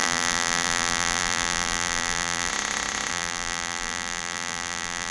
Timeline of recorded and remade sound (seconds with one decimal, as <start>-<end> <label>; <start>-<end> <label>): 0.0-2.5 remade; 2.5-3.1 recorded; 3.1-5.1 remade